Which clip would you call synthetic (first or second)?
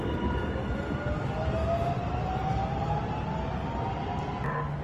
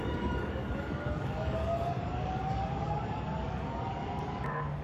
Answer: second